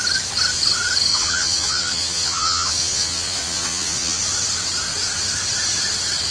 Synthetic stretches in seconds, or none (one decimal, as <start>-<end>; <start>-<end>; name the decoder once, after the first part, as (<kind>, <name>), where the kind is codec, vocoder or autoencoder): 1.1-4.2 (vocoder, Vocos)